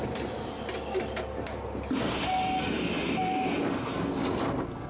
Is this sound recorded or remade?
recorded